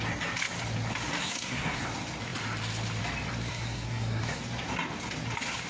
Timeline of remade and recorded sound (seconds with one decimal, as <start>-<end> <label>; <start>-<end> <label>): 0.0-1.2 recorded; 1.2-1.8 remade; 1.8-3.5 recorded; 3.5-4.4 remade; 4.4-5.7 recorded